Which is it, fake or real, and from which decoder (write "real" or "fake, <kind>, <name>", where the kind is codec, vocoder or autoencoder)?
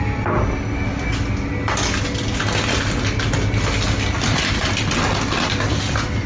real